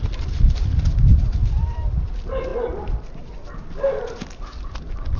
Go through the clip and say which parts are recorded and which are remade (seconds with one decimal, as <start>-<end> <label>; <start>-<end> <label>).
0.0-5.2 recorded